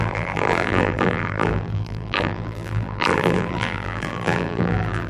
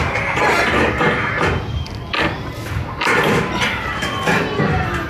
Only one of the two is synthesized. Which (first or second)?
first